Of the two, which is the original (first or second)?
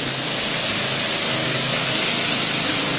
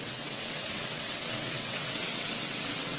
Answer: first